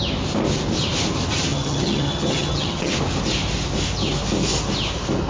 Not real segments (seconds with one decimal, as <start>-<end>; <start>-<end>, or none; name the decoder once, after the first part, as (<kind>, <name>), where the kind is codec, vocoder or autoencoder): 1.5-2.9 (vocoder, HiFi-GAN)